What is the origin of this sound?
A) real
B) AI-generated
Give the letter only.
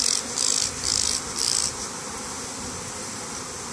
B